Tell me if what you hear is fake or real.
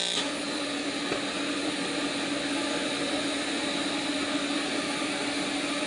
real